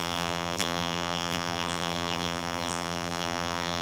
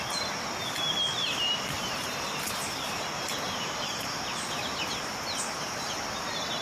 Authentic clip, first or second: second